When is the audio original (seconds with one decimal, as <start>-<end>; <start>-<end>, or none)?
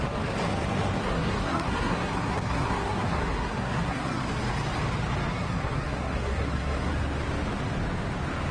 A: 0.0-1.0; 4.2-5.3; 6.9-8.5